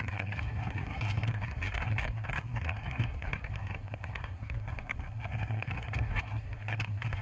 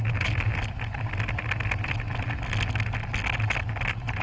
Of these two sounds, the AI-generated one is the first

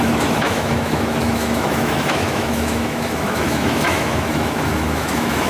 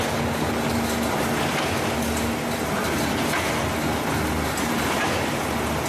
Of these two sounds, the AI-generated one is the first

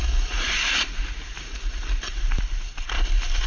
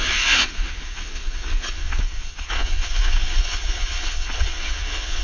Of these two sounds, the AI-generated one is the second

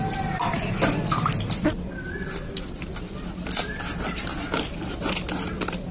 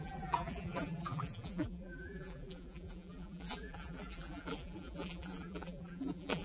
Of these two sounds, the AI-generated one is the second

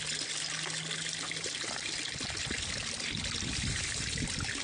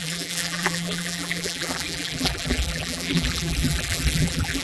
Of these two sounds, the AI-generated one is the second